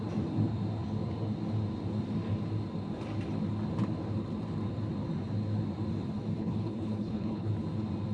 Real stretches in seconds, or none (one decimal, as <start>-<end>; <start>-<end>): 0.0-6.4; 7.5-8.1

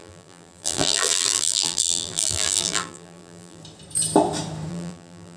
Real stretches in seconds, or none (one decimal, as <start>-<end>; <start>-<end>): 3.6-4.7

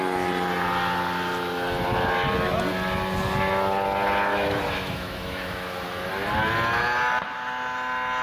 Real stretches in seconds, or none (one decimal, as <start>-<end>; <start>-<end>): 0.0-4.3; 6.1-8.2